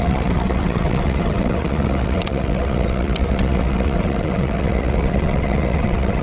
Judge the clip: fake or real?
fake